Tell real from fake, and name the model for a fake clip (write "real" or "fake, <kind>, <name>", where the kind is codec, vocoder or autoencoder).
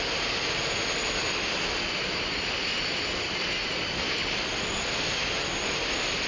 real